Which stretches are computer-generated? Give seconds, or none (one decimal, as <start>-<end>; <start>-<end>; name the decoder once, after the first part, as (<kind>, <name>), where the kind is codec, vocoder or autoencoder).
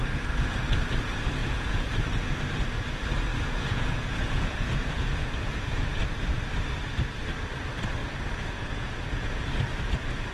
1.4-1.9 (vocoder, Vocos); 3.3-6.0; 8.0-9.4